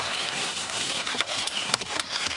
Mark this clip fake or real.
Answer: fake